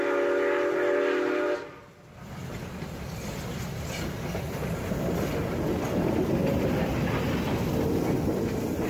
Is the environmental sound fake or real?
real